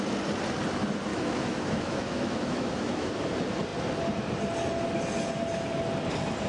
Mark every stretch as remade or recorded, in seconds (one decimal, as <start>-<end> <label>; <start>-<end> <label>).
0.0-1.1 recorded; 1.1-3.1 remade; 3.1-6.5 recorded